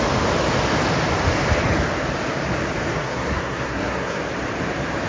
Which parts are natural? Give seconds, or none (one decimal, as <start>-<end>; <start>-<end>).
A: 0.0-2.9; 4.2-5.1